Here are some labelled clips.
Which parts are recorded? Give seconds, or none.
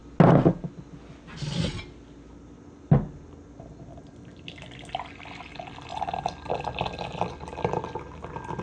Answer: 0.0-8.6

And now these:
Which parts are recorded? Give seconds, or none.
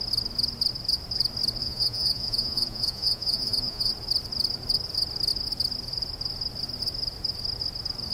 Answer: 0.0-1.6; 3.9-8.1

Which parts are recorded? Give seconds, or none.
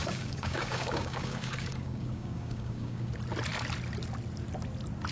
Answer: 3.1-5.1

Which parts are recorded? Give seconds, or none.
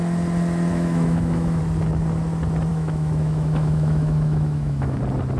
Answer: 0.0-0.7; 1.6-2.7; 5.0-5.4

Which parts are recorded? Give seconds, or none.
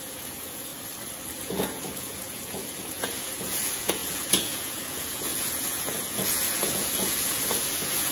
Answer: 0.7-1.4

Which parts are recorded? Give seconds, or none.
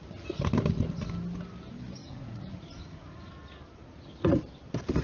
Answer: 0.0-2.0; 3.3-3.8; 4.4-5.0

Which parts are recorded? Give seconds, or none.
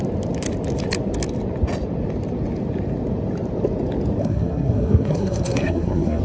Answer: 0.0-4.2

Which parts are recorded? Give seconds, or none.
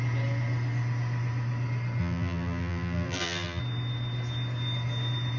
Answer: 0.0-2.0; 3.6-5.4